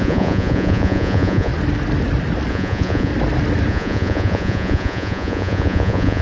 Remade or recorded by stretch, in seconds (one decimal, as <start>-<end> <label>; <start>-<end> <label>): 0.0-1.5 remade; 1.5-2.5 recorded; 2.5-3.1 remade; 3.1-3.7 recorded; 3.7-6.2 remade